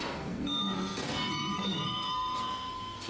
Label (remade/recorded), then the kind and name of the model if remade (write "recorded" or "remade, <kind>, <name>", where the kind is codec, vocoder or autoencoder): remade, codec, SNAC